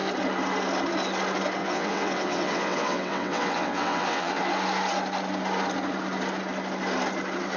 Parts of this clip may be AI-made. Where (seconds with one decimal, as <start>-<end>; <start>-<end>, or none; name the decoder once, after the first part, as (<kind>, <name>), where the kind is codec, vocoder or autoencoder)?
1.6-4.4 (vocoder, WaveNeXt)